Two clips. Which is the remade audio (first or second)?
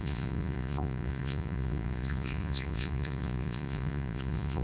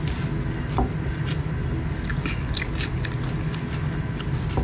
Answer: first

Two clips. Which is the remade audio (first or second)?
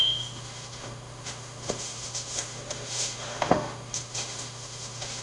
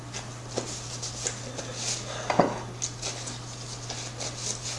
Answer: first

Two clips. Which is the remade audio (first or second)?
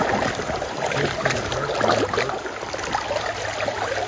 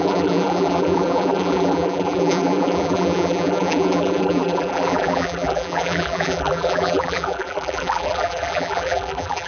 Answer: second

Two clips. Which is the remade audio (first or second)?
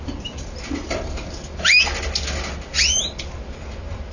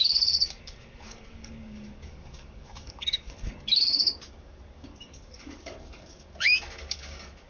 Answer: second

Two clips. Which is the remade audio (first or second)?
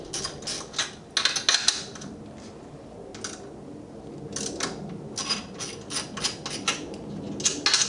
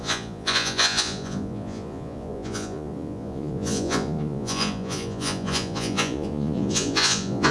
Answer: second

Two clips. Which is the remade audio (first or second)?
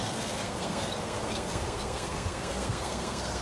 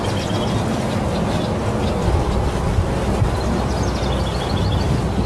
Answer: first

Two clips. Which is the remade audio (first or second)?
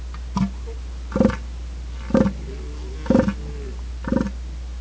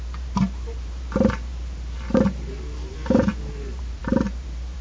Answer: second